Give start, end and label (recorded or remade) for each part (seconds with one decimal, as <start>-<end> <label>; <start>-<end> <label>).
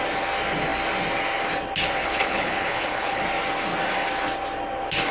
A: 0.0-2.0 recorded; 2.0-3.2 remade; 3.2-5.1 recorded